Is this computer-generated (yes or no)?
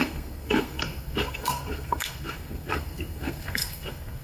yes